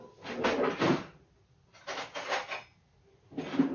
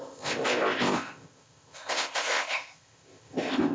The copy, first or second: second